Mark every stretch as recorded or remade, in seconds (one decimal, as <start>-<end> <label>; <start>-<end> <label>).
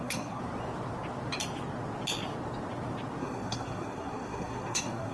0.0-0.4 remade; 0.4-3.2 recorded; 3.2-5.1 remade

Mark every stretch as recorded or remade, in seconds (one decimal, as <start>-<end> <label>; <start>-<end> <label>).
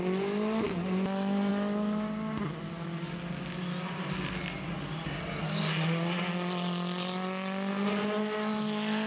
0.0-9.1 recorded